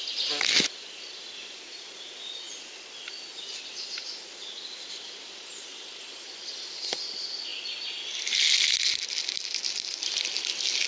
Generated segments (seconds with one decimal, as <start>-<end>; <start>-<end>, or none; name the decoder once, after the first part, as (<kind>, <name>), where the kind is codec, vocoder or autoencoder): none